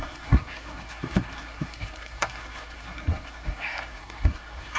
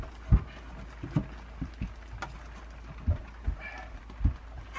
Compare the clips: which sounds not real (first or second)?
first